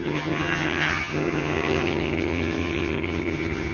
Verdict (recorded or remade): remade